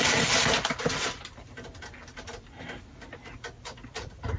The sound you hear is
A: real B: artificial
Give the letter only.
B